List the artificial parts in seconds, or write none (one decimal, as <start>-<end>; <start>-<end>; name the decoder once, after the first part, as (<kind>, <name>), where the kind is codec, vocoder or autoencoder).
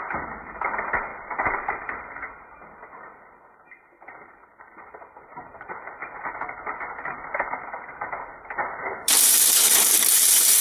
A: 0.0-10.6 (vocoder, BigVGAN v2)